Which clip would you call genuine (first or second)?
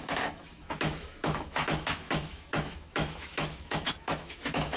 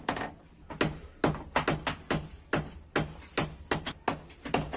second